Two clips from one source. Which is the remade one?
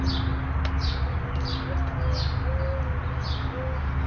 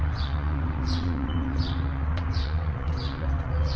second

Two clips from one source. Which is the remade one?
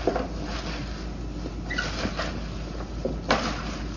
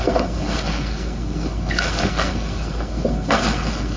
second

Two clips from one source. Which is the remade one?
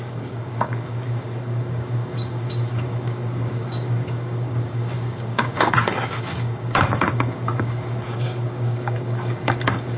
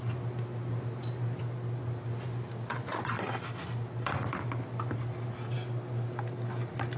first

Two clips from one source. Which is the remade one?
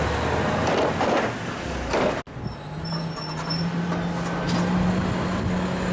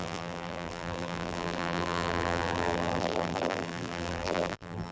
second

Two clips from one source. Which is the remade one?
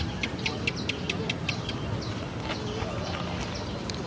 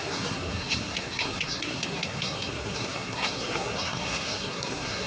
second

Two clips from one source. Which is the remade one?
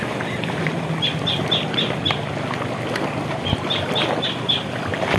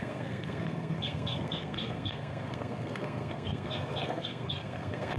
second